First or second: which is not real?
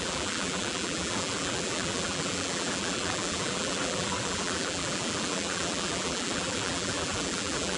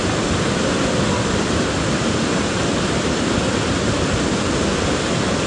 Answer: first